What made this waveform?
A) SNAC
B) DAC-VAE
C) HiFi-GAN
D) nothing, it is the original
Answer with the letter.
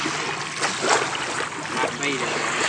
D